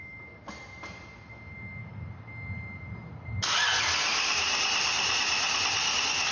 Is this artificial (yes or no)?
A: no